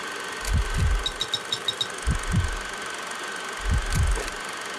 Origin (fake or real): real